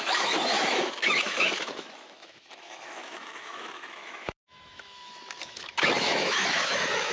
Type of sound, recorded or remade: remade